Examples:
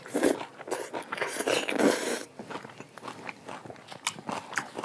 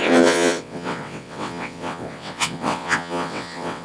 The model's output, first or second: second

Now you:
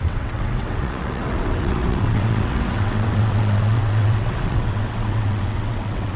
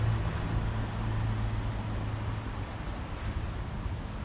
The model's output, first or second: first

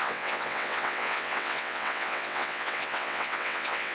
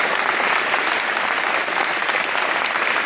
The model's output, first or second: first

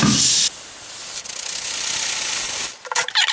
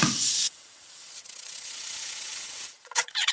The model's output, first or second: second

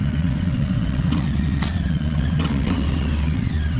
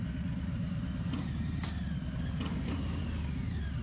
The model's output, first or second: first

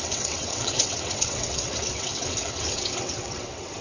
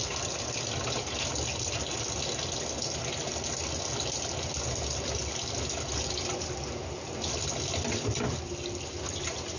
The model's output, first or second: first